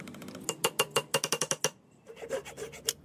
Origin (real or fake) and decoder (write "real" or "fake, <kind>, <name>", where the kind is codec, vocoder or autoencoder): real